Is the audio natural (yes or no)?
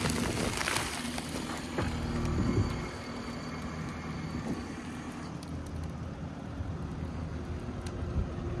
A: yes